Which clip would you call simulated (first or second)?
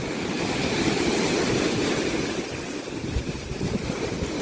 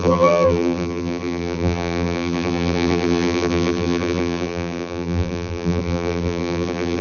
second